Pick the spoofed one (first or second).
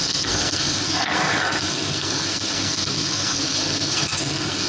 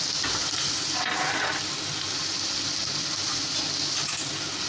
first